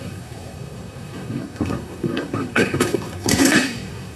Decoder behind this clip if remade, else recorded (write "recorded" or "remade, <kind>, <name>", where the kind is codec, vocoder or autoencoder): remade, codec, SNAC